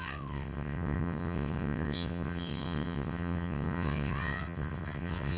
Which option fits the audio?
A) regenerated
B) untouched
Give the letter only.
A